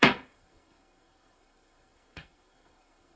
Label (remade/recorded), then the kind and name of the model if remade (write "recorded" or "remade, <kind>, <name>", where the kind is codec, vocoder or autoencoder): remade, codec, SNAC